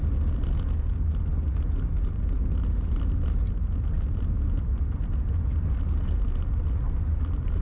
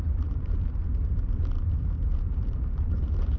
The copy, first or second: second